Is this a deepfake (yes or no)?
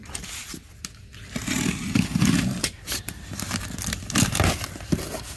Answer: no